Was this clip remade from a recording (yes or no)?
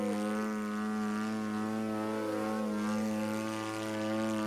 no